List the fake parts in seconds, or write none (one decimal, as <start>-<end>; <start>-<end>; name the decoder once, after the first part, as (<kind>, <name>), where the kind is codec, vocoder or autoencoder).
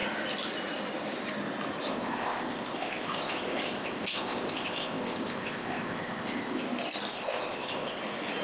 1.9-6.6 (codec, ZipCodec); 7.1-8.0